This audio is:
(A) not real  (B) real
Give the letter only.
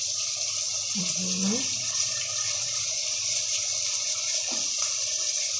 A